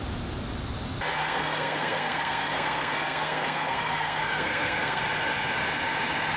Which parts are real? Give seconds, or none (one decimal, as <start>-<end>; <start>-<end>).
0.0-1.2; 5.0-6.4